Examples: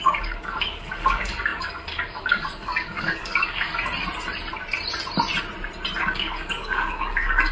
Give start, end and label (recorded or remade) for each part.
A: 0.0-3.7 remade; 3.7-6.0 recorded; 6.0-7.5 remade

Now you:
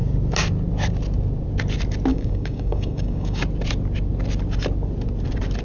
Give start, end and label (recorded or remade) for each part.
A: 0.0-2.1 recorded; 2.1-3.4 remade; 3.4-5.6 recorded

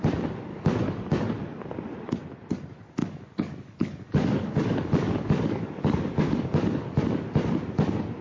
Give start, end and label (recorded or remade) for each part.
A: 0.0-0.5 recorded; 0.5-1.2 remade; 1.2-3.0 recorded; 3.0-7.0 remade; 7.0-8.2 recorded

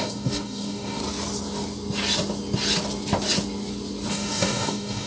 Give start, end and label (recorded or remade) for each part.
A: 0.0-1.0 remade; 1.0-4.1 recorded; 4.1-5.1 remade